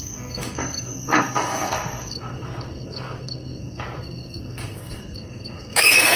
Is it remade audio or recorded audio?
remade